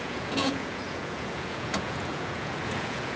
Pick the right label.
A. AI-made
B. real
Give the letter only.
A